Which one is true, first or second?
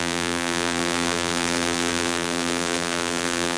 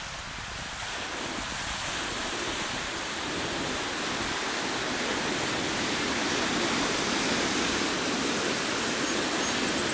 second